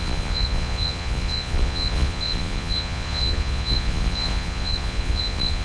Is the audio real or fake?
fake